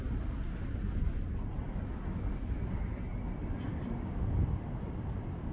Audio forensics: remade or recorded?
recorded